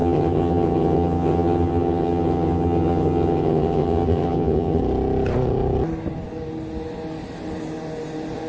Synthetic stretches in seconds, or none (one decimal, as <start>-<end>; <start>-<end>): 0.0-4.8